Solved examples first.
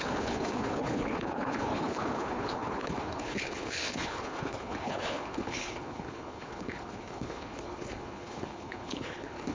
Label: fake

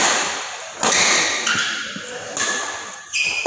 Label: real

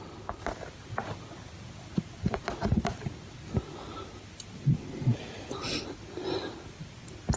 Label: real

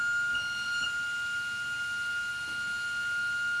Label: real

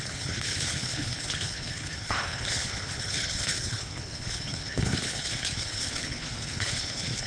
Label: fake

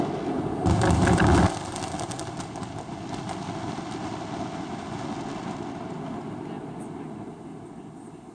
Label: real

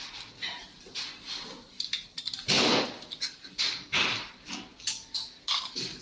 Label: real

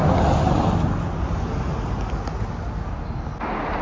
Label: real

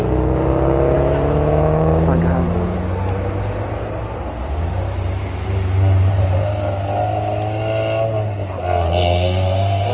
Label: real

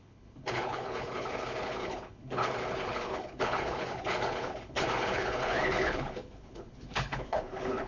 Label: fake